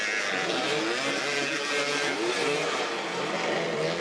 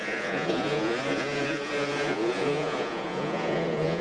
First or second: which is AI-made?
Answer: second